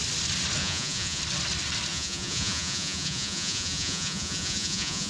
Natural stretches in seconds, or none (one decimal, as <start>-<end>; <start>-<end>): 0.0-0.6; 1.2-1.9